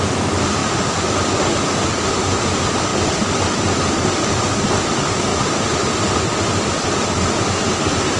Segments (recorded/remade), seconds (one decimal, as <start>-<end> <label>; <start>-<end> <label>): 0.0-0.6 recorded; 0.6-1.3 remade; 1.3-8.2 recorded